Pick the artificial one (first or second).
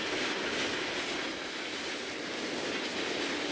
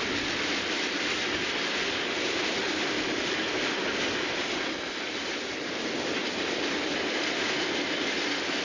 second